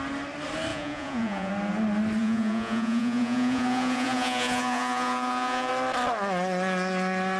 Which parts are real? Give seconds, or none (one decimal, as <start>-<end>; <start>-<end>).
0.0-0.7; 1.5-2.2; 5.7-7.4